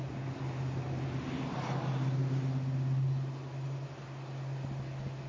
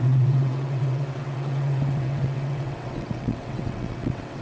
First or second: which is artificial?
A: second